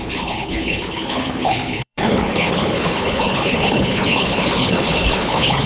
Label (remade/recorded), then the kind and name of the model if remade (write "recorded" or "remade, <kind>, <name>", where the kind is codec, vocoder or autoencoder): remade, codec, HILCodec